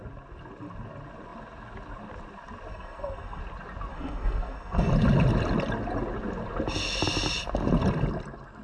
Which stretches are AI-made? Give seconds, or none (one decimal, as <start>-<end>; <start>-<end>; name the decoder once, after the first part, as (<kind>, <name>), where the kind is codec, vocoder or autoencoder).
2.7-3.4 (codec, SNAC); 3.9-4.9

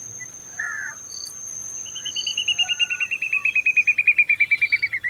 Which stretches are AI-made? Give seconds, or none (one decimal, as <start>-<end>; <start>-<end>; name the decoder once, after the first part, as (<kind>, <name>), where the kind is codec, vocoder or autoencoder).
0.0-3.4 (vocoder, BigVGAN v2); 4.0-5.1

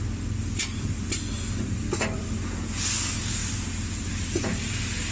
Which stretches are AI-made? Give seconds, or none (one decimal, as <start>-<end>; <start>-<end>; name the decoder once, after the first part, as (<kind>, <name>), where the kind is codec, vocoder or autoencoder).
none

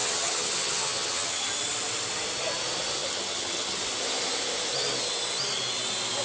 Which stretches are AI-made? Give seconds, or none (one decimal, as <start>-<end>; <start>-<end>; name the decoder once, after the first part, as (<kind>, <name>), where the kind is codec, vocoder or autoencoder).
0.0-1.5 (vocoder, HiFi-GAN); 3.0-3.8

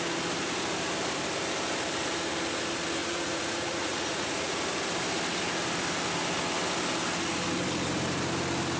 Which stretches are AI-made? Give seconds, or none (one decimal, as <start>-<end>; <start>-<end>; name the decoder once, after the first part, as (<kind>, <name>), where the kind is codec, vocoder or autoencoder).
3.0-4.6 (vocoder, Vocos)

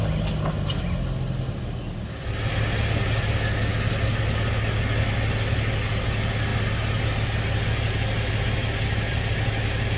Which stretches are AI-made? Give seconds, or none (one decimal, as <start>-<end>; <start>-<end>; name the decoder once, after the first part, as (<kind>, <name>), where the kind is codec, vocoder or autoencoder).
none

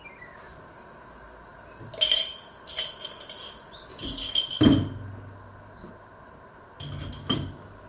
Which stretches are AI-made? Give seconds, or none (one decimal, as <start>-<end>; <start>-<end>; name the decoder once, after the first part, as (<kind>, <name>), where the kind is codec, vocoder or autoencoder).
3.9-4.4 (codec, DAC); 7.2-7.9

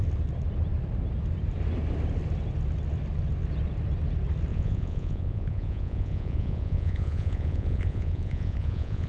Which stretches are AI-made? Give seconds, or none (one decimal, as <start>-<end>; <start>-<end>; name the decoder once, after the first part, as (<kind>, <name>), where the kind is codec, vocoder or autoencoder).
4.5-9.1 (vocoder, Vocos)